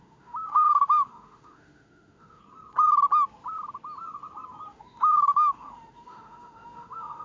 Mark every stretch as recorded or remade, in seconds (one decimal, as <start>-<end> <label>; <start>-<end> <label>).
0.0-2.4 remade; 2.4-4.7 recorded; 4.7-7.2 remade